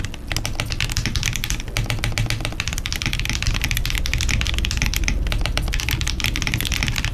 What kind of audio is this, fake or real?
real